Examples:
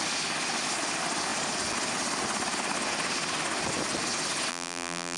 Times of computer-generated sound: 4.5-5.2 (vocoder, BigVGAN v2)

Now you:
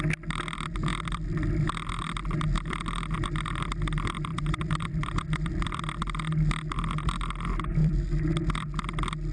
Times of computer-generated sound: 0.9-1.9 (vocoder, BigVGAN v2); 4.3-5.8; 7.8-8.3

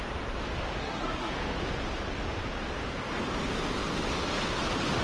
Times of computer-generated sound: 0.8-1.3 (codec, SNAC)